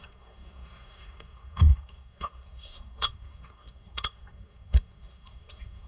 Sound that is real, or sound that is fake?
fake